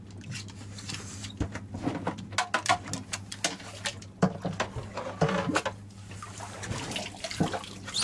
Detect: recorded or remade recorded